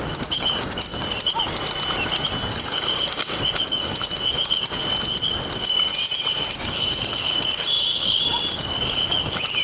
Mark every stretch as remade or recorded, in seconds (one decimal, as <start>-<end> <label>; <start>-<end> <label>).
0.0-0.9 remade; 0.9-2.5 recorded; 2.5-4.8 remade; 4.8-5.3 recorded; 5.3-5.9 remade; 5.9-6.5 recorded; 6.5-9.6 remade